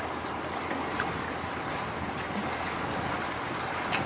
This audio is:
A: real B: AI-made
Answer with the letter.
A